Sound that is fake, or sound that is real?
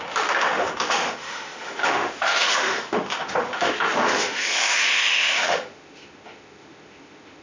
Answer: fake